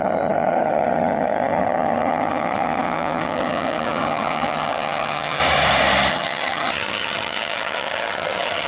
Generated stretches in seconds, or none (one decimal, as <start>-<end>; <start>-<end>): 0.0-5.4; 6.1-8.7